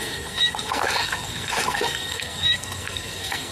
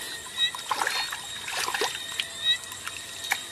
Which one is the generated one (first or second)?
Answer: first